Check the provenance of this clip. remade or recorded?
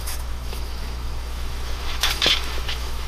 remade